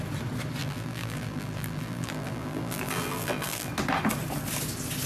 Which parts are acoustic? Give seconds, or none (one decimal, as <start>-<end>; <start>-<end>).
0.0-0.6; 3.7-5.1